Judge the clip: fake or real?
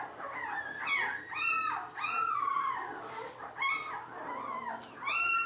real